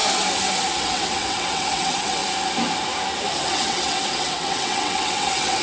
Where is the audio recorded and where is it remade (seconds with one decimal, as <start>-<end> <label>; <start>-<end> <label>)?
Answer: 0.0-0.8 recorded; 0.8-2.2 remade; 2.2-3.4 recorded; 3.4-5.6 remade

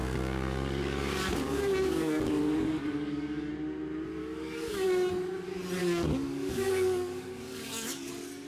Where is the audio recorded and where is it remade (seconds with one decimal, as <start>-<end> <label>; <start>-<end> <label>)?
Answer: 0.0-3.5 remade; 3.5-4.2 recorded; 4.2-5.1 remade; 5.1-5.8 recorded; 5.8-8.1 remade; 8.1-8.5 recorded

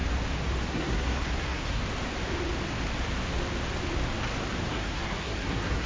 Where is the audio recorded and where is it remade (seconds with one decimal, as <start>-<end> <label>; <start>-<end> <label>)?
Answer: 0.0-0.7 recorded; 0.7-1.8 remade; 1.8-4.7 recorded; 4.7-5.9 remade

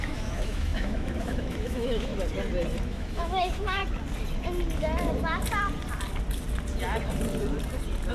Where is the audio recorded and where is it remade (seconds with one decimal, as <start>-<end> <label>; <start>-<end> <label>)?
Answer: 0.0-2.1 remade; 2.1-2.8 recorded; 2.8-3.8 remade; 3.8-8.1 recorded

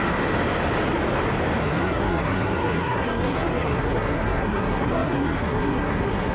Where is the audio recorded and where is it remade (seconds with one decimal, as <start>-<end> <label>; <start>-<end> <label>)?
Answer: 0.0-1.6 recorded; 1.6-6.3 remade

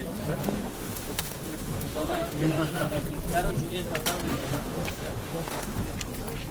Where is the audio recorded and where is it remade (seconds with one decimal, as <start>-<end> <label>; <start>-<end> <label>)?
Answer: 0.0-0.4 recorded; 0.4-3.0 remade; 3.0-4.4 recorded; 4.4-5.8 remade; 5.8-6.5 recorded

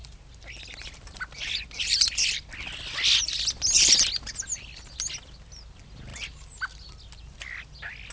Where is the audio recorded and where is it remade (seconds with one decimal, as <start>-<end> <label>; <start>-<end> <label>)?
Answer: 0.0-8.1 recorded